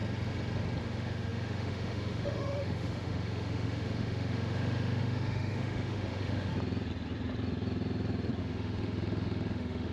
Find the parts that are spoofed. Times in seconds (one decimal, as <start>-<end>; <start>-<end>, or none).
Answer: 0.8-6.5; 8.4-9.9